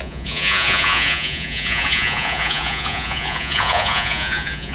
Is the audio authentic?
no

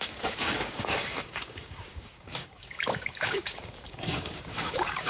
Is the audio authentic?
no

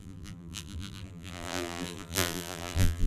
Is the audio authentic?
no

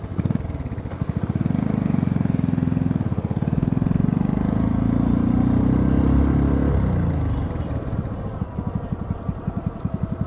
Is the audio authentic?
yes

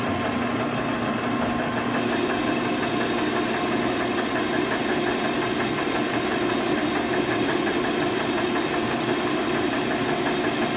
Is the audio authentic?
yes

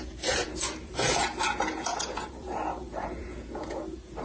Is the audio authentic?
no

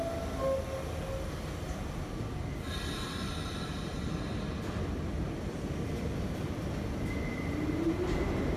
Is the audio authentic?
yes